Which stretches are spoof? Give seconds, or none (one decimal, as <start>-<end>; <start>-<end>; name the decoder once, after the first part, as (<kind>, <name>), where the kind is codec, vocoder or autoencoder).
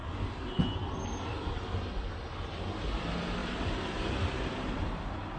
0.0-2.5 (vocoder, BigVGAN v2); 3.4-5.0